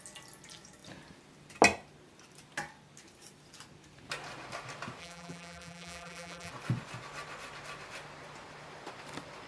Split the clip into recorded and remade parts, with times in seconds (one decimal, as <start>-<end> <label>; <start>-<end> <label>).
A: 0.0-5.0 recorded; 5.0-6.5 remade; 6.5-9.5 recorded